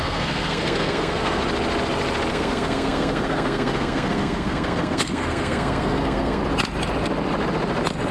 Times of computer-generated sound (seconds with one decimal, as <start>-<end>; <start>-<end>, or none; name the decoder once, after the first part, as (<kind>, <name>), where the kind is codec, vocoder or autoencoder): 0.0-1.4 (codec, SNAC); 2.3-6.4